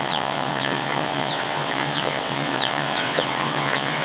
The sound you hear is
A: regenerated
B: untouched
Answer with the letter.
A